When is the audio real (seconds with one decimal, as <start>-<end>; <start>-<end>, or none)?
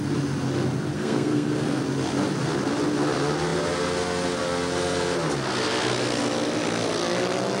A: 0.0-0.9; 1.8-7.6